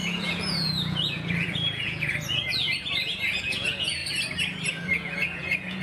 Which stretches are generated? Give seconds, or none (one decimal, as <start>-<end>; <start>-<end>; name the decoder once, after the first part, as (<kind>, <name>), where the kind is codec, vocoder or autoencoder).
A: 0.0-4.0 (vocoder, Vocos); 4.7-5.8